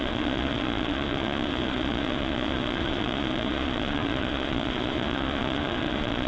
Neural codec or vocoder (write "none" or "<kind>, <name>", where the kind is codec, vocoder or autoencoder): vocoder, Vocos